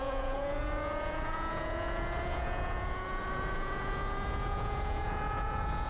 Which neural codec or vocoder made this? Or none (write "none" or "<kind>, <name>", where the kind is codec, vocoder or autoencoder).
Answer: vocoder, Vocos